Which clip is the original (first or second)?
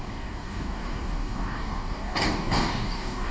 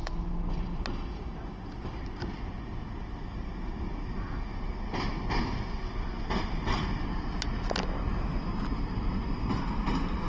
second